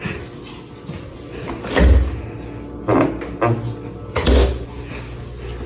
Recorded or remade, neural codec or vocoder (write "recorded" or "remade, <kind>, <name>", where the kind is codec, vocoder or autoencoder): recorded